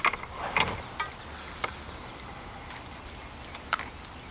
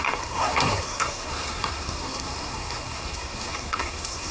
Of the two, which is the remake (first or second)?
second